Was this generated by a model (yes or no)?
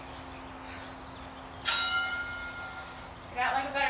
no